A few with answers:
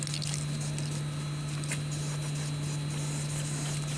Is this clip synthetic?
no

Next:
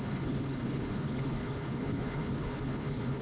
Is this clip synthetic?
yes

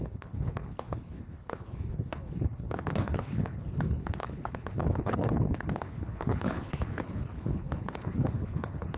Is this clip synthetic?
yes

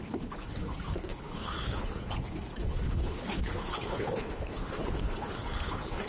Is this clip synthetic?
yes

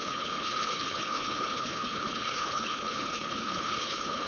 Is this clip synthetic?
yes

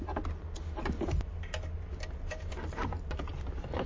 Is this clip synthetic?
no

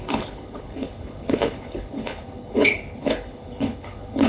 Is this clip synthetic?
yes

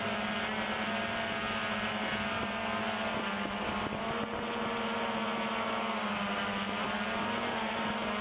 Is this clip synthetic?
no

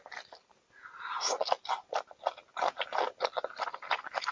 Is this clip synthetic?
no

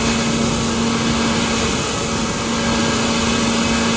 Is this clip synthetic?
no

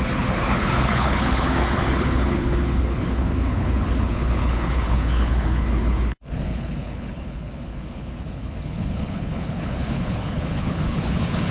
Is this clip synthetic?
yes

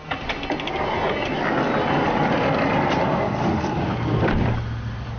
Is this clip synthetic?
no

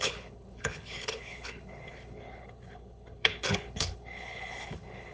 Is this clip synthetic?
yes